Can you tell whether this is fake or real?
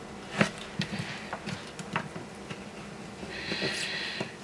real